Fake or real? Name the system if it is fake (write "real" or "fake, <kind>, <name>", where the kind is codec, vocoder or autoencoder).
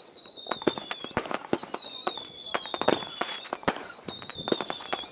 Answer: fake, vocoder, Vocos